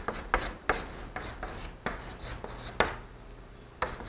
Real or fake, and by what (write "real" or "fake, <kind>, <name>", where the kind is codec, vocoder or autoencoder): real